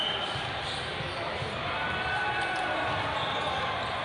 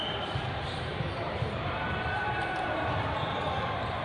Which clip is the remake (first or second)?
second